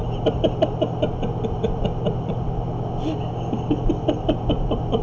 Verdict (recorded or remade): recorded